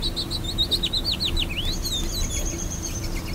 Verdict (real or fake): real